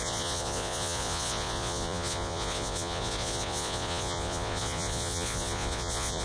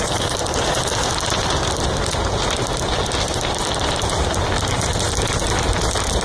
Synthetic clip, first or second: first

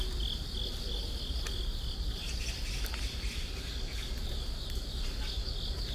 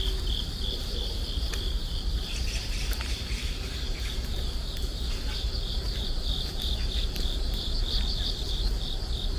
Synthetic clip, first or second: second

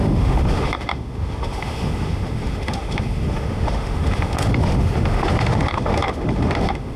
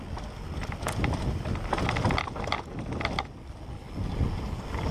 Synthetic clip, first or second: first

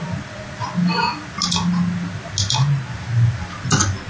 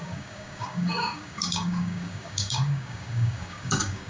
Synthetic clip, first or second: second